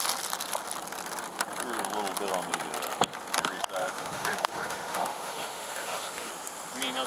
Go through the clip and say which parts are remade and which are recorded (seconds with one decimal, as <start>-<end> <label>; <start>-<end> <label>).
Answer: 0.0-3.8 recorded; 3.8-6.3 remade; 6.3-7.1 recorded